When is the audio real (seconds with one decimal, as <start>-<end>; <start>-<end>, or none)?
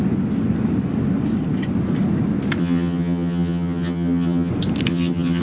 0.0-2.6; 4.5-4.9